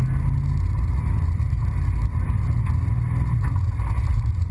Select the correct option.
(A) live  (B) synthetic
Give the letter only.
A